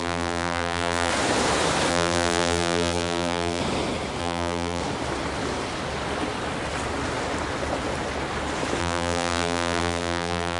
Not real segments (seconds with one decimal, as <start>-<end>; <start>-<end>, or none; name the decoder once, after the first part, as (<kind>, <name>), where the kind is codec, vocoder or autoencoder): 0.0-1.1 (vocoder, BigVGAN v2); 1.9-3.6; 4.2-4.8; 8.8-10.6